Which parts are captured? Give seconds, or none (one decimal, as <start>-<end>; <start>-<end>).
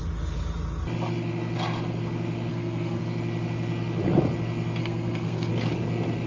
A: 0.0-2.5; 3.0-4.8; 5.5-6.3